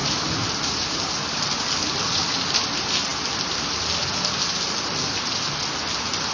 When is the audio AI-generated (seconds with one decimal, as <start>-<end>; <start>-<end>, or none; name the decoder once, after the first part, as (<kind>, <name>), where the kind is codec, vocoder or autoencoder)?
0.0-1.1 (vocoder, BigVGAN v2)